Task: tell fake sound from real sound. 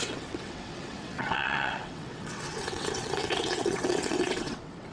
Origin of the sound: fake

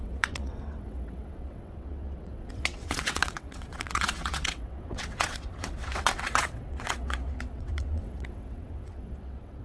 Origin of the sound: fake